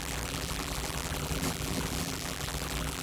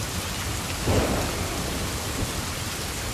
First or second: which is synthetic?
first